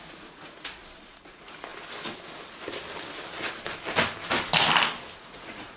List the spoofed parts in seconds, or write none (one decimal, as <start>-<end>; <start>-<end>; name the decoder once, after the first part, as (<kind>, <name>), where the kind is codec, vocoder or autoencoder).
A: 0.0-1.7 (vocoder, Vocos); 5.2-5.8